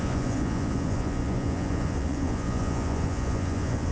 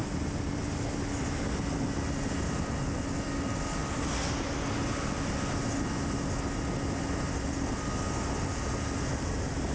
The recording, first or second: second